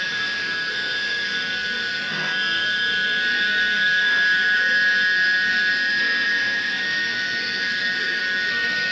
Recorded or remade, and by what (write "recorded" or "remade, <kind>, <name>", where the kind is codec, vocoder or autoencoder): remade, codec, SNAC